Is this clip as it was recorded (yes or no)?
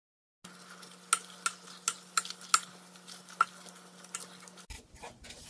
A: yes